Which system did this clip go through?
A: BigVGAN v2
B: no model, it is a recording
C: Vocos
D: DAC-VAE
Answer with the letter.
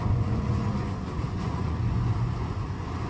C